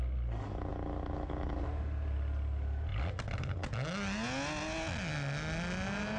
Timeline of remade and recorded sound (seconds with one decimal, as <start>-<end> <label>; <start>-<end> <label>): 0.0-6.2 recorded